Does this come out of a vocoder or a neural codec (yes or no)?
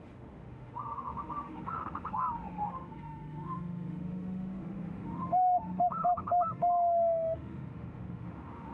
yes